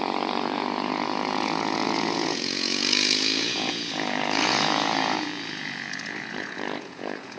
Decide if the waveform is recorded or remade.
remade